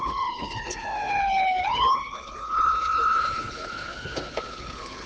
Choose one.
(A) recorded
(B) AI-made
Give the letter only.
B